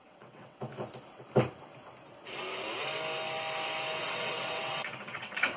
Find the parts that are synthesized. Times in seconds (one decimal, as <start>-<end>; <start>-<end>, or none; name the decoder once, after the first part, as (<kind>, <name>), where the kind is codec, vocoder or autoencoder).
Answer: 0.0-0.6 (vocoder, WaveNeXt); 4.0-5.6